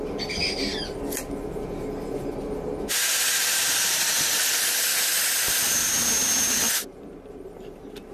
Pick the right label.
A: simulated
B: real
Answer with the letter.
B